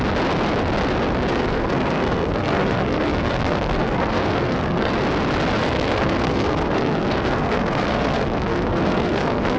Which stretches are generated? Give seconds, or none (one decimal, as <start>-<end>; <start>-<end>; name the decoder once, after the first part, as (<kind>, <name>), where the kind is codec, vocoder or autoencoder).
1.3-4.9 (codec, SNAC); 5.6-9.6